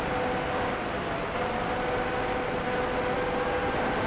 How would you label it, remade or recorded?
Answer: recorded